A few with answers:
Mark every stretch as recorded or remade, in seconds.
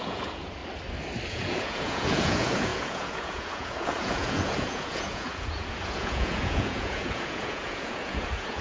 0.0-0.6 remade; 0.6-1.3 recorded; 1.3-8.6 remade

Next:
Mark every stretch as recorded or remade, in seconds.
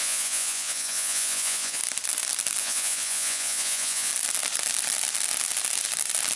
0.0-1.8 remade; 1.8-2.6 recorded; 2.6-4.1 remade; 4.1-6.4 recorded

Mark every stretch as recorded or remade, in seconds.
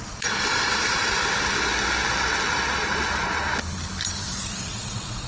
0.0-1.2 remade; 1.2-4.4 recorded; 4.4-5.3 remade